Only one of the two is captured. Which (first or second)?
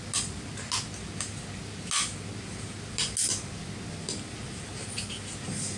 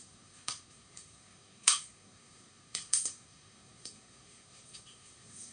first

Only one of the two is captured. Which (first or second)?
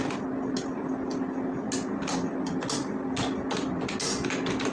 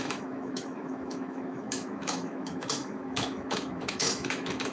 first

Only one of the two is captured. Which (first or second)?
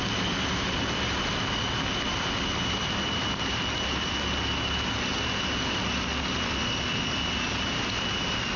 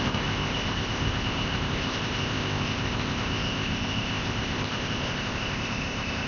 first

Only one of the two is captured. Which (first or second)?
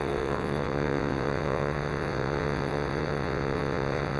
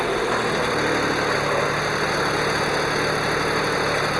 second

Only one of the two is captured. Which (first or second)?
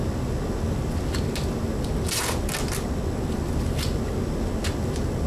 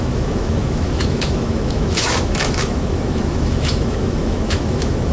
first